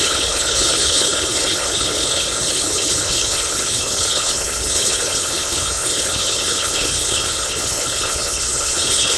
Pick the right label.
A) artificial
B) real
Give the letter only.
A